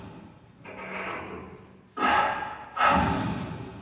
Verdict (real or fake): real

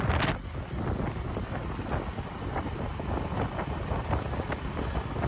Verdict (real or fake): real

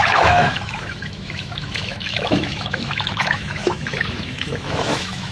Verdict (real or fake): fake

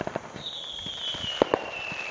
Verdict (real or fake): real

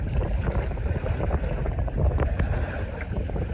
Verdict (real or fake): fake